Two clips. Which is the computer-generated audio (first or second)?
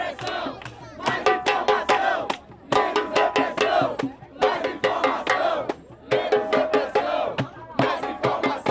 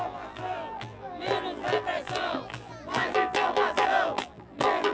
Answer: second